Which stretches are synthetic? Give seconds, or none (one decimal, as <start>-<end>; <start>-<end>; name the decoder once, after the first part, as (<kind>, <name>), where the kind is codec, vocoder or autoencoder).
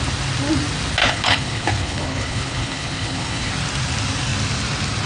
1.0-3.5 (codec, HILCodec)